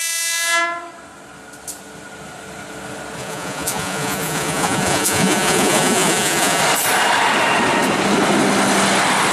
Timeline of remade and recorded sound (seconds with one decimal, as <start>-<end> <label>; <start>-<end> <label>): 0.0-3.2 recorded; 3.2-6.6 remade; 6.6-9.3 recorded